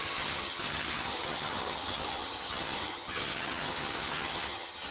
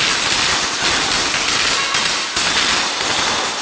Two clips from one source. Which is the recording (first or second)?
second